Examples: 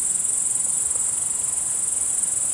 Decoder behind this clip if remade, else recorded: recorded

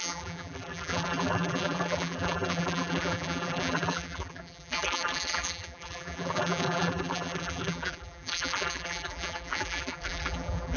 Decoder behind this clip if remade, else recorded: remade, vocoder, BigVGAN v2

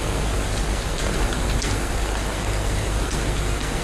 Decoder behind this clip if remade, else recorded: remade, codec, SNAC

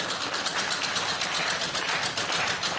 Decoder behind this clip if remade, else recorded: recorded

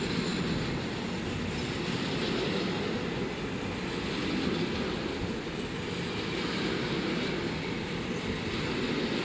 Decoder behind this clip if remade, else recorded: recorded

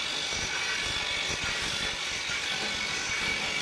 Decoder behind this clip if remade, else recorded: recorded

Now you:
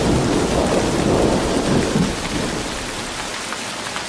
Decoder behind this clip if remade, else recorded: recorded